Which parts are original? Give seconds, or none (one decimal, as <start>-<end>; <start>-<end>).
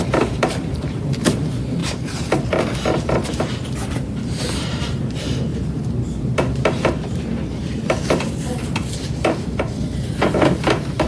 2.7-3.9